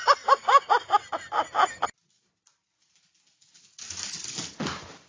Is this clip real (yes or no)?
yes